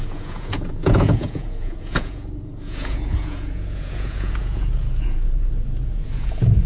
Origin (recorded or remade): remade